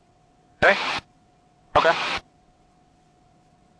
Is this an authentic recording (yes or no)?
no